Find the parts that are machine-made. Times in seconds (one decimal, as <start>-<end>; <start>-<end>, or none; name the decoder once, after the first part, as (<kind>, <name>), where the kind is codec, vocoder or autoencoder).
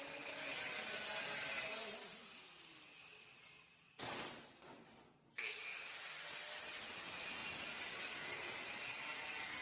none